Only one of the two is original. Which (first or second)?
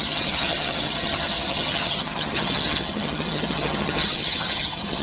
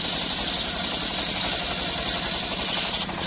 second